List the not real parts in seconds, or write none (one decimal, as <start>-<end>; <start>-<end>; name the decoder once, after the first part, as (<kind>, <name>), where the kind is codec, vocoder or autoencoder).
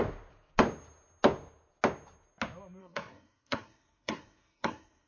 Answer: 2.8-5.1 (codec, SNAC)